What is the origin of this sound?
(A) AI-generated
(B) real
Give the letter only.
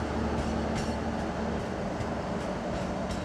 B